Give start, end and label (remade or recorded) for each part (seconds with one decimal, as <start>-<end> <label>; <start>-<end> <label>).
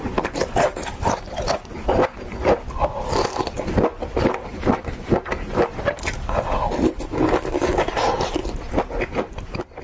0.0-9.8 recorded